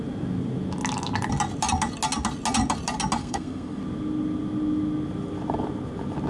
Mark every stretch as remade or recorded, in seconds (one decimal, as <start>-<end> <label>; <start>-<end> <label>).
0.0-3.2 recorded; 3.2-3.8 remade; 3.8-6.3 recorded